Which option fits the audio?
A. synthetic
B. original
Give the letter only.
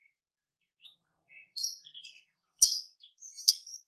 A